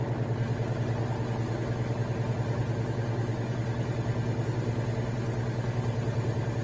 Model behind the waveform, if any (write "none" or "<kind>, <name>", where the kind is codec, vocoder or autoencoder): none